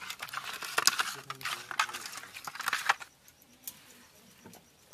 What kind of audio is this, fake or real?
real